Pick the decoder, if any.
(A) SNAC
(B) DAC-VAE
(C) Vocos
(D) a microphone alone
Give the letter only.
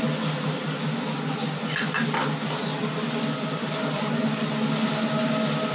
D